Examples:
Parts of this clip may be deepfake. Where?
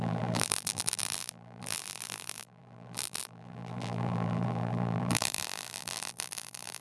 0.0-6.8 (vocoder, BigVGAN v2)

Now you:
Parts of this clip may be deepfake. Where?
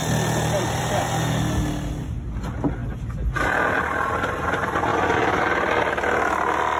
none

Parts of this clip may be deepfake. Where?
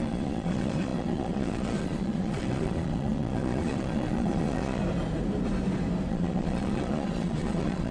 0.0-4.8 (vocoder, Vocos); 6.1-7.9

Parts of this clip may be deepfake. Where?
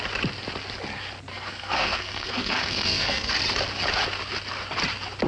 1.3-3.3 (codec, SNAC)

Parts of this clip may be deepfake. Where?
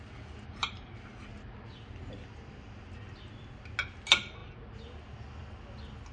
none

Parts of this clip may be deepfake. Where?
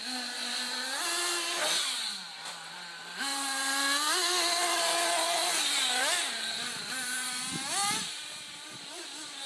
none